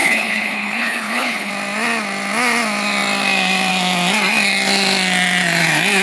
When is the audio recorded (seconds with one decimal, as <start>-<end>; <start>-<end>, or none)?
1.5-6.0